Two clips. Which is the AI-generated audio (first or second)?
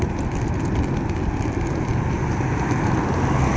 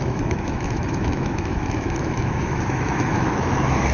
second